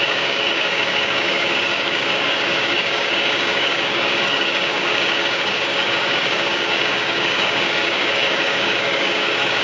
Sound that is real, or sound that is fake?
fake